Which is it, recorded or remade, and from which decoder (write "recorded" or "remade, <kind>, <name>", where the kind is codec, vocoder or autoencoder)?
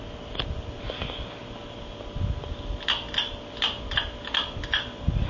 recorded